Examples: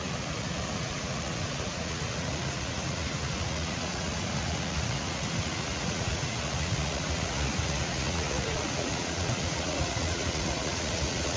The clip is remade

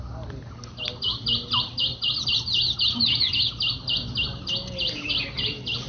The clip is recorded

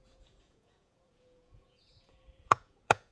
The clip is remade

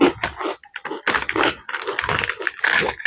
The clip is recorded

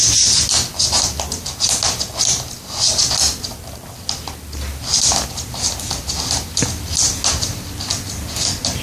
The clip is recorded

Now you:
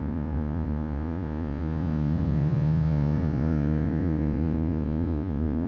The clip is remade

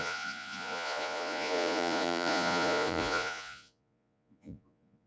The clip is remade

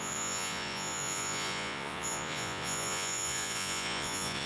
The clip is remade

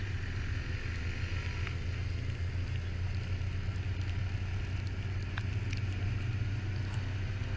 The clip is recorded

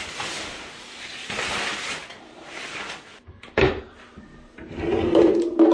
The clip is recorded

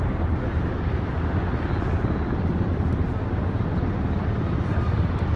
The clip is recorded